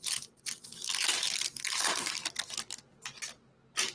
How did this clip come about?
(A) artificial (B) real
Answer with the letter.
B